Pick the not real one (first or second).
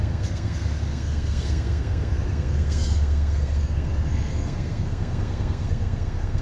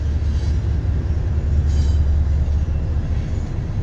first